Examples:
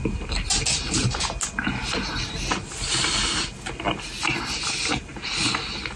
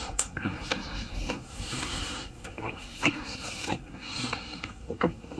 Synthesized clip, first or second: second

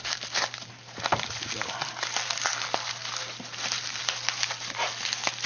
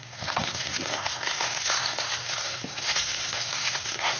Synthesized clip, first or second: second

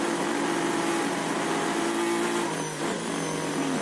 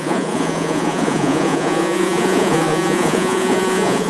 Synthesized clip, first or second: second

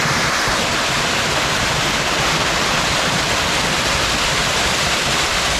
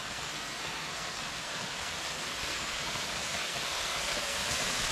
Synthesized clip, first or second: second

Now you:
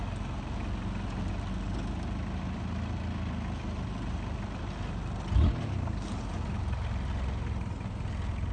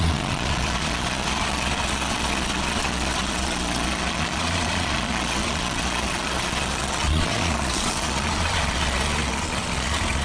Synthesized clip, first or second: second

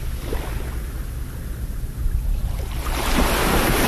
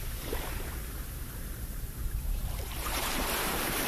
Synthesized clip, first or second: second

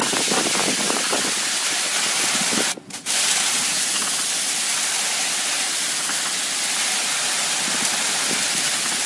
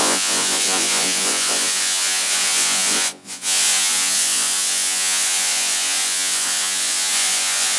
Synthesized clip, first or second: second